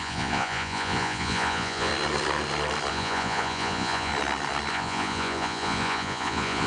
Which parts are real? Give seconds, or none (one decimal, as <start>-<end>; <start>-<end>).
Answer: 1.9-2.9; 4.1-4.7